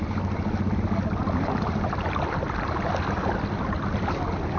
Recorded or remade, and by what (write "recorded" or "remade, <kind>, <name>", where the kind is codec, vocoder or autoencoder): recorded